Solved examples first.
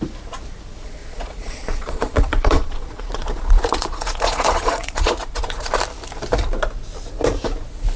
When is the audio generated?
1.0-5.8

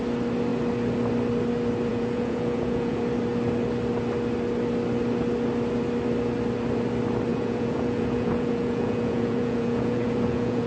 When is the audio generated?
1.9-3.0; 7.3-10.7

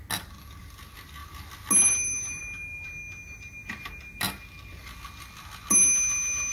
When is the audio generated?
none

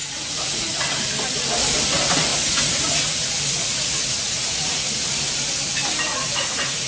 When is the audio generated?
0.0-0.8; 2.3-4.9; 6.1-6.9